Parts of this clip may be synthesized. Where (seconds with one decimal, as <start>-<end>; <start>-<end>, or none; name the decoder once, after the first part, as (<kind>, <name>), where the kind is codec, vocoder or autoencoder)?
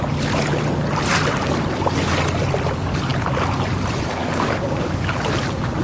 4.2-5.1 (codec, DAC)